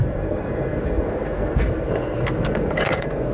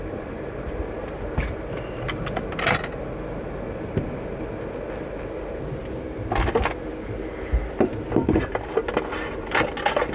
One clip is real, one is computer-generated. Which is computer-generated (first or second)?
first